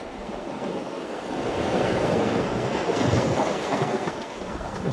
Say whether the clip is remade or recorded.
remade